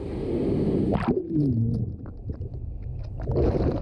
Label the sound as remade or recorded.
recorded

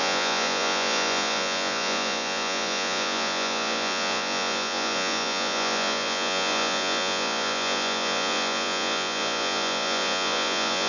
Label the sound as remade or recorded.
remade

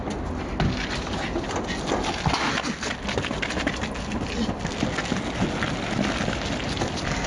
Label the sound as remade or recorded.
recorded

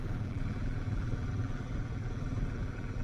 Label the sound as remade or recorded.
remade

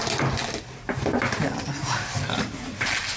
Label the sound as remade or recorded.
recorded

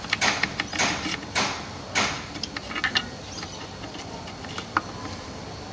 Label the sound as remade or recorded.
recorded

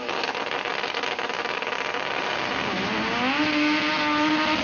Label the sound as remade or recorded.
recorded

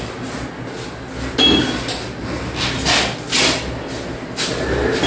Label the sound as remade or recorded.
recorded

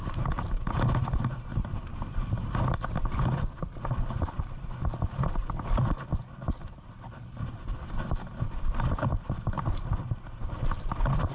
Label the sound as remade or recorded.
recorded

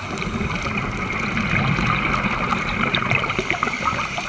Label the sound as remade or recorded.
recorded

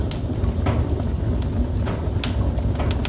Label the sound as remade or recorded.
recorded